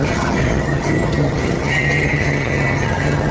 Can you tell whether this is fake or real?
fake